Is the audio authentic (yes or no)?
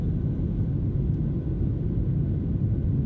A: yes